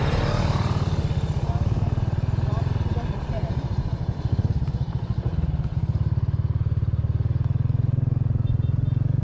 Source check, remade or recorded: recorded